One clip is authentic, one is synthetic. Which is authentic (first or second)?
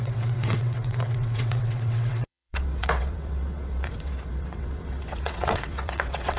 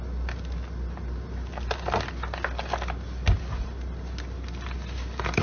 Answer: second